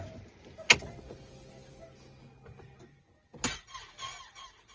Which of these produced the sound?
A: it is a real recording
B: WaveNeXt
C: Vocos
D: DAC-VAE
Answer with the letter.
A